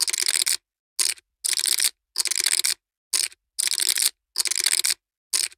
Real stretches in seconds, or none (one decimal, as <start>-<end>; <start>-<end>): 0.0-5.6